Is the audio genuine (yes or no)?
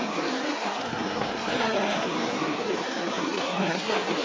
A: no